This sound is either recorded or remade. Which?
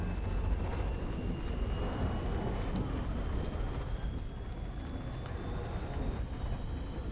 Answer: recorded